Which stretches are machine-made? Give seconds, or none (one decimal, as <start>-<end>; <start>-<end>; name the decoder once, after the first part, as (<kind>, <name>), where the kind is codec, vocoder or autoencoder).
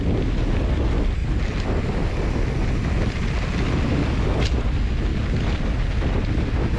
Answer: none